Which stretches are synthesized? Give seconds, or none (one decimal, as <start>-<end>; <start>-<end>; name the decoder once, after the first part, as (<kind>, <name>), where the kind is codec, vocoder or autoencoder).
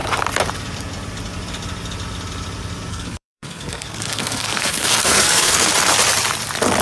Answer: 2.9-5.7 (codec, SNAC)